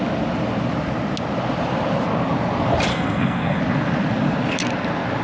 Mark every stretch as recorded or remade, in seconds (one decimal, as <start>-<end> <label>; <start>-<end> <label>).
0.0-2.9 recorded; 2.9-3.6 remade; 3.6-5.2 recorded